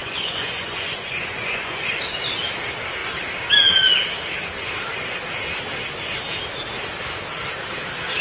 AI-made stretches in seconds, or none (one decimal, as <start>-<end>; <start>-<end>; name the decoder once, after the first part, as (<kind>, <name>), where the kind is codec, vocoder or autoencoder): 0.0-2.0 (vocoder, Vocos)